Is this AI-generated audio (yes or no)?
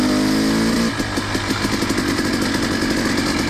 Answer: no